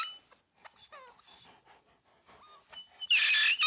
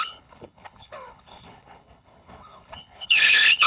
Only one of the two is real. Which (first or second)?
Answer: first